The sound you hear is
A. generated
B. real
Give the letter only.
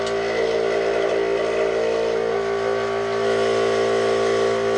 B